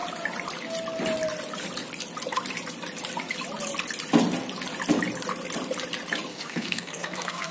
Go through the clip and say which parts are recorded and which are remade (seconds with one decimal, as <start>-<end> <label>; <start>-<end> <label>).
0.0-6.3 recorded; 6.3-7.5 remade